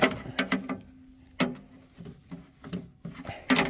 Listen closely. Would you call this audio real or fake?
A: real